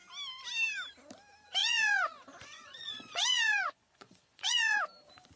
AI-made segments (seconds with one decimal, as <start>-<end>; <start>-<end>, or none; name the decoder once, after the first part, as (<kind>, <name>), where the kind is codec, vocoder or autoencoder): 1.6-4.8 (vocoder, Vocos)